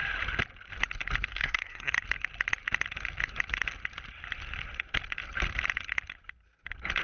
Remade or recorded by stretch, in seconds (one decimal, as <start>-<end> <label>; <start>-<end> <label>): 0.0-1.3 recorded; 1.3-1.9 remade; 1.9-7.0 recorded